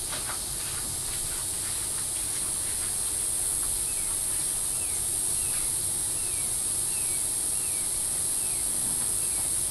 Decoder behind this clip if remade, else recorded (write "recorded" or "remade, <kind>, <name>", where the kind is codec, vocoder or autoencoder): recorded